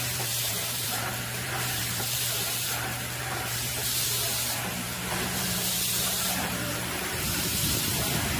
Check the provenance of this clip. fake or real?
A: fake